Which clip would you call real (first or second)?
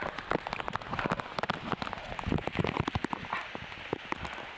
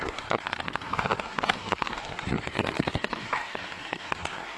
first